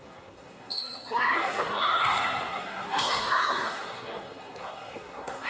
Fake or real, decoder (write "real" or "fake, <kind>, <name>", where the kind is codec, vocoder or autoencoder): fake, codec, SNAC